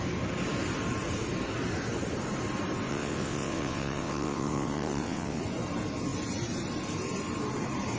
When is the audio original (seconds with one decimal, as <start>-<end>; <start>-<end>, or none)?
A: 0.0-2.9; 5.4-8.0